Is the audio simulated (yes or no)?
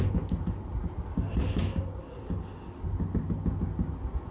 no